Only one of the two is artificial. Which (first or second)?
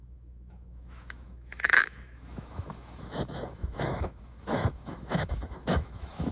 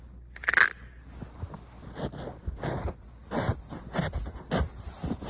first